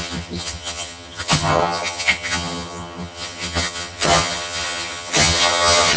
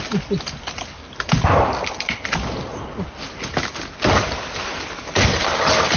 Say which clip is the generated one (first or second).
first